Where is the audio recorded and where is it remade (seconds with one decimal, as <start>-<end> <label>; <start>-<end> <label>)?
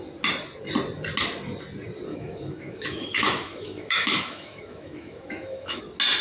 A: 0.0-2.1 recorded; 2.1-5.8 remade; 5.8-6.2 recorded